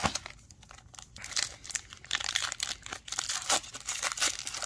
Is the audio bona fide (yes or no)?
yes